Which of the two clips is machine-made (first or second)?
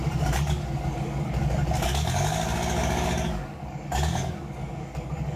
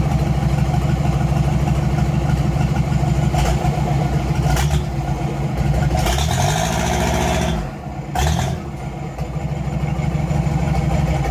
first